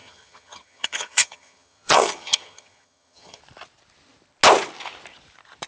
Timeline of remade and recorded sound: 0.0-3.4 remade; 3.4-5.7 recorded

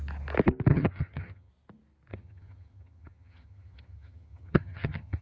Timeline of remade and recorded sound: 0.0-0.7 recorded; 0.7-1.5 remade; 1.5-2.1 recorded; 2.1-5.2 remade

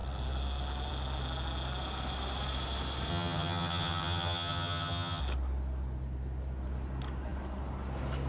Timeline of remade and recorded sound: 0.0-3.1 recorded; 3.1-5.2 remade; 5.2-8.3 recorded

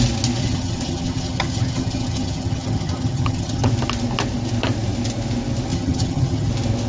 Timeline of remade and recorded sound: 0.0-0.4 recorded; 0.4-3.7 remade; 3.7-5.7 recorded; 5.7-6.5 remade; 6.5-6.9 recorded

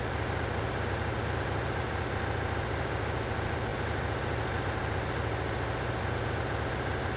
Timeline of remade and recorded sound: 0.0-7.2 recorded

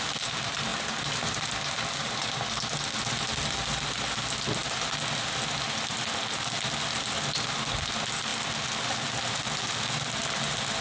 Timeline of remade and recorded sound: 0.0-10.8 recorded

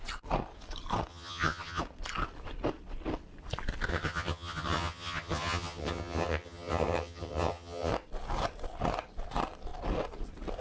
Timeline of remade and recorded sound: 0.0-1.1 recorded; 1.1-1.8 remade; 1.8-3.9 recorded; 3.9-7.9 remade; 7.9-10.6 recorded